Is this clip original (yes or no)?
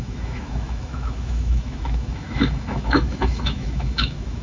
no